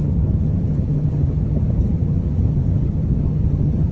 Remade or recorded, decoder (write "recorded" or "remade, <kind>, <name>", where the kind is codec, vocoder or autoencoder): remade, vocoder, HiFi-GAN